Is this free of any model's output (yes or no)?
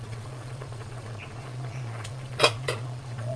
no